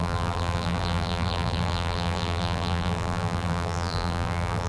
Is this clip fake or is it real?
fake